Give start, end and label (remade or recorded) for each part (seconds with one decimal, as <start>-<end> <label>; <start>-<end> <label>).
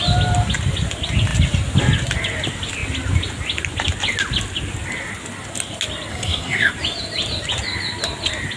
0.0-6.1 recorded; 6.1-6.7 remade; 6.7-8.6 recorded